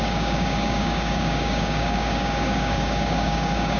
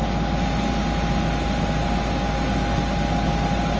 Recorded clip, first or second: second